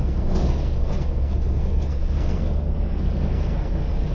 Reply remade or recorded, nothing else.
remade